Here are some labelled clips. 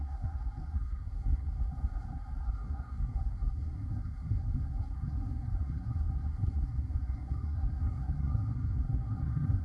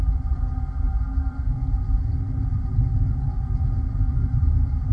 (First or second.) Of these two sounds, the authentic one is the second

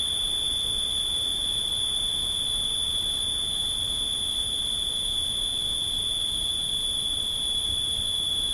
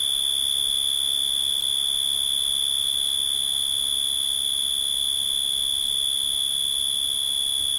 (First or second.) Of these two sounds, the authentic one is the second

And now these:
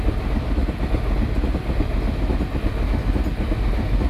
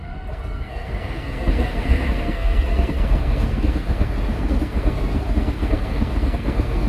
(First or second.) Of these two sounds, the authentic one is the first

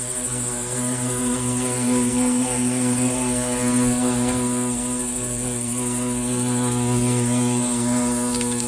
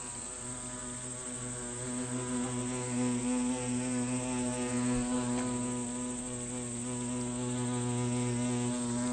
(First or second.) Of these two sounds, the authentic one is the second